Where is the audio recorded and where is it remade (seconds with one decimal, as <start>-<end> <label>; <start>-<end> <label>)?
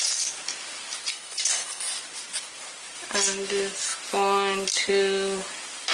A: 0.0-1.1 recorded; 1.1-1.9 remade; 1.9-5.9 recorded